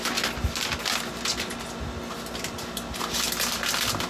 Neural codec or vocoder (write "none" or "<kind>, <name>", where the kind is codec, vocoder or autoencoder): none